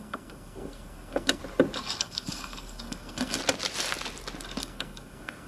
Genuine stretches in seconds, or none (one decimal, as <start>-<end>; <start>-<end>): 1.4-2.0; 3.4-4.6